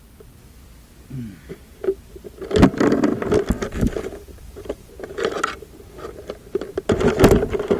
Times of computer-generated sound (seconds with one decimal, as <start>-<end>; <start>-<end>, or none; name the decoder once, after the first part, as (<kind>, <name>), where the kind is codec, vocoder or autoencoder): 3.6-4.9 (vocoder, BigVGAN v2)